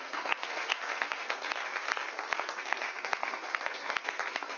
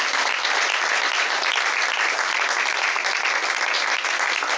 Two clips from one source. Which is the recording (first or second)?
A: second